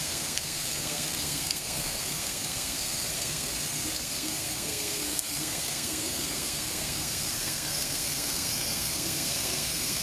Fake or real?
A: fake